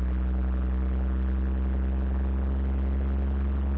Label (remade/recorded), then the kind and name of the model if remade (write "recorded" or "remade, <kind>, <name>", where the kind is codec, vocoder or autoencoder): recorded